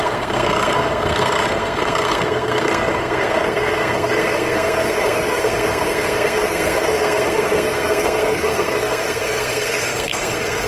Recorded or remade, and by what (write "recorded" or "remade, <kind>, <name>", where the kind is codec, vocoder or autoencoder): remade, codec, SNAC